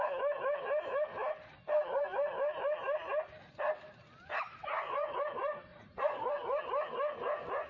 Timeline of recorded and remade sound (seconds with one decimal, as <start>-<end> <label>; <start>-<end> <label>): 0.0-4.6 recorded; 4.6-5.2 remade; 5.2-5.7 recorded; 5.7-6.3 remade; 6.3-7.7 recorded